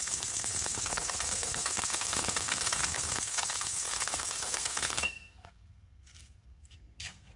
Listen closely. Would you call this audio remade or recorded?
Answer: remade